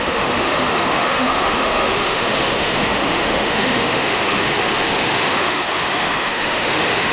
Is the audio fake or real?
fake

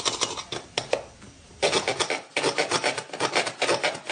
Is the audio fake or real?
real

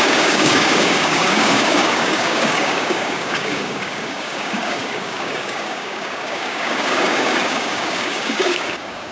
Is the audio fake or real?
fake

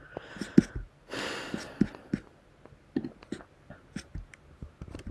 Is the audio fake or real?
real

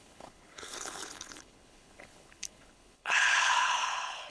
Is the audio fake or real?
fake